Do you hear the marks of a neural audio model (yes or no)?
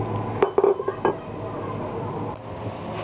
no